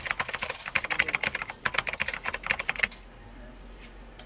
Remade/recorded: recorded